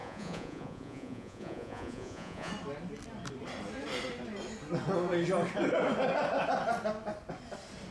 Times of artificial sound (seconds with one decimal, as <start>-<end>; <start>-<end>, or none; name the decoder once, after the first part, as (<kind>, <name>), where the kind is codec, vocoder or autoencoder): 0.0-2.5 (vocoder, Vocos)